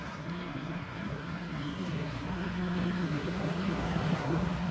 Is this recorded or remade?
remade